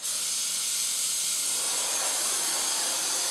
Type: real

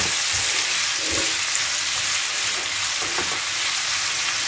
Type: real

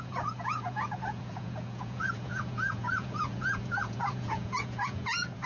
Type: fake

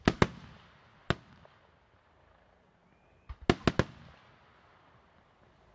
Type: real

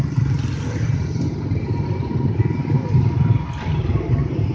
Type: real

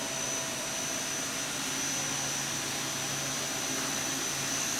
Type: real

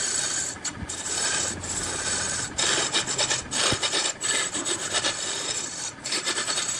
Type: real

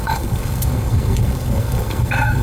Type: fake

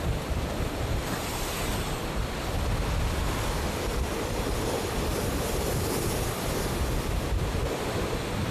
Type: real